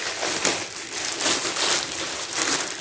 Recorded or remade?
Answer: remade